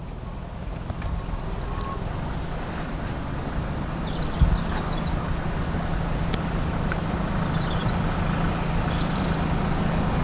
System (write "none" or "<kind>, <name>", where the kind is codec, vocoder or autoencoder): none